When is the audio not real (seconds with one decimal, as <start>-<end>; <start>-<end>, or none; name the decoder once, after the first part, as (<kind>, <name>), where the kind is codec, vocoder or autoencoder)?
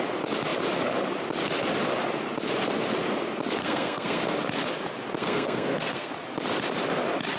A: 3.6-4.2 (codec, SNAC); 5.2-6.1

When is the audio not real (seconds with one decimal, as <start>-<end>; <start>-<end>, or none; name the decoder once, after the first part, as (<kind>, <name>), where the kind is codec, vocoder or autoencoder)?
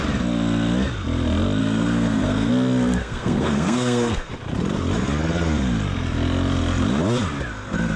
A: 1.6-2.5 (codec, SNAC); 3.0-4.3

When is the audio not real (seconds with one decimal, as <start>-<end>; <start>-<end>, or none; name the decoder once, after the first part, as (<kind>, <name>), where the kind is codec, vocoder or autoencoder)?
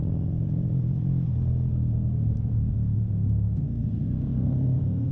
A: 1.7-5.1 (codec, SNAC)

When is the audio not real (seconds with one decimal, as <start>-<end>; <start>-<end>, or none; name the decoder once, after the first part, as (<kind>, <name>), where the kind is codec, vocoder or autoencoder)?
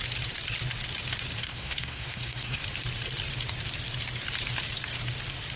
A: 1.4-2.6 (codec, SNAC)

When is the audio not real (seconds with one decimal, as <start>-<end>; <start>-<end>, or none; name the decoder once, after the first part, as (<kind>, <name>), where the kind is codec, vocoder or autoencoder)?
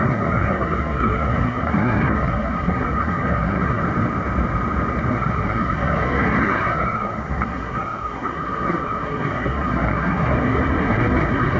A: 0.0-3.8 (codec, SNAC); 5.1-11.6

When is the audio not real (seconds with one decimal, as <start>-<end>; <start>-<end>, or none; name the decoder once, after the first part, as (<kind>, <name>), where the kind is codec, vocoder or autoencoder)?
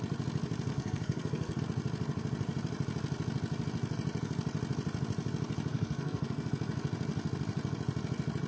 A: 0.7-1.6 (codec, SNAC); 5.7-6.5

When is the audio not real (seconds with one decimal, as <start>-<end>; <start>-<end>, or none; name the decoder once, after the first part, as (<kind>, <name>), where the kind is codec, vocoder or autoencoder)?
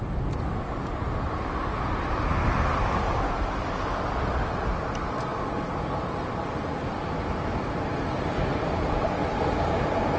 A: none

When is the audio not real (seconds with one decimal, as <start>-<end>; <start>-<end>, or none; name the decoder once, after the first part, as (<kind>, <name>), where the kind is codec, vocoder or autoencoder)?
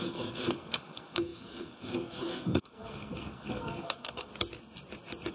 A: 0.0-4.3 (codec, SNAC)